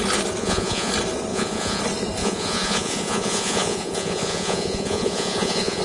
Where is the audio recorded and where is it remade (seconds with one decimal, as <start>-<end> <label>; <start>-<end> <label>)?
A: 0.0-0.4 recorded; 0.4-0.9 remade; 0.9-1.3 recorded; 1.3-1.8 remade; 1.8-2.2 recorded; 2.2-5.8 remade